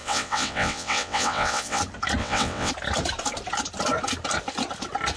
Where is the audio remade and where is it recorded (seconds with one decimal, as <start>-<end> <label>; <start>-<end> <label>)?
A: 0.0-1.8 remade; 1.8-2.2 recorded; 2.2-2.7 remade; 2.7-5.2 recorded